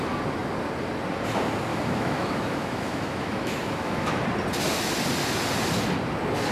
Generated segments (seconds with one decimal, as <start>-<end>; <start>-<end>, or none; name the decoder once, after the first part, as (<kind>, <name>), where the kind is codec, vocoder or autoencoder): 1.7-4.2 (autoencoder, DAC-VAE)